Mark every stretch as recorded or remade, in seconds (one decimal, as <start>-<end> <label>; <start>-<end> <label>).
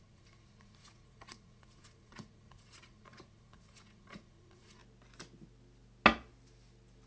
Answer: 0.0-4.8 remade; 4.8-7.1 recorded